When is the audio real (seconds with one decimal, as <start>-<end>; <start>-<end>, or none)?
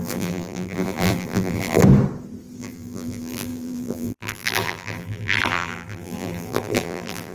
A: 1.8-2.6